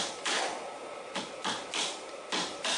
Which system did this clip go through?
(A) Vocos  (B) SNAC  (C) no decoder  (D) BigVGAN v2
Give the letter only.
C